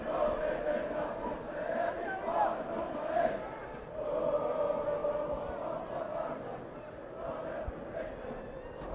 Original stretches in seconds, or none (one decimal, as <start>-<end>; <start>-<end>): 0.0-8.9